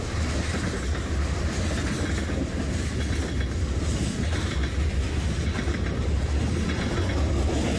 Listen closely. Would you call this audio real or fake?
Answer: real